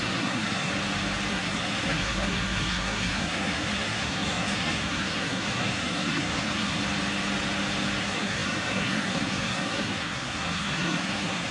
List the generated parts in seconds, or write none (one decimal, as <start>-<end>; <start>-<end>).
0.0-0.7; 1.3-6.8; 8.0-11.5